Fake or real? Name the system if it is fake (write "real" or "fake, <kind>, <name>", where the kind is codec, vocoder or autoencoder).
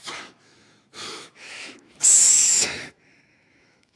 fake, autoencoder, DAC-VAE